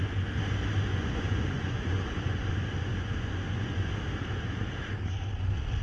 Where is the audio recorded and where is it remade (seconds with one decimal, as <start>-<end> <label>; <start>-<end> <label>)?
0.0-0.9 recorded; 0.9-3.9 remade; 3.9-5.8 recorded